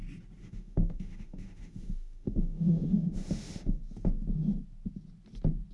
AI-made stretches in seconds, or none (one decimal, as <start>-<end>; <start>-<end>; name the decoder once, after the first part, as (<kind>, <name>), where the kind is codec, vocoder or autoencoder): 0.4-3.8 (autoencoder, DAC-VAE)